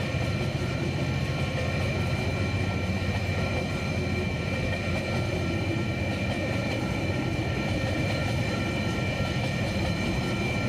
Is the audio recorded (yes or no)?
no